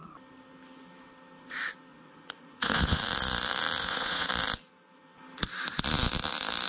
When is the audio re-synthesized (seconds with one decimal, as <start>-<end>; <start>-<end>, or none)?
1.9-3.0; 3.8-4.3